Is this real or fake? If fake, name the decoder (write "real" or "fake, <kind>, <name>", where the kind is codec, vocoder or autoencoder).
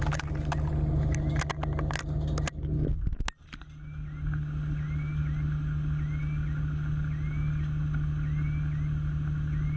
real